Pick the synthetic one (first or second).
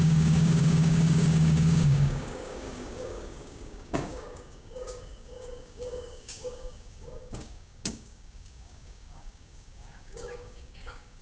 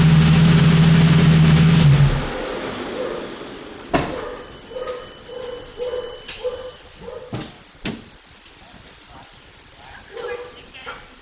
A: first